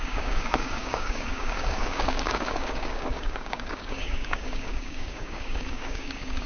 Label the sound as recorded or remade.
remade